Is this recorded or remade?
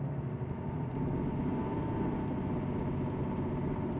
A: recorded